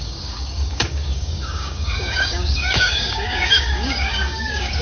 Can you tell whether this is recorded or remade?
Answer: remade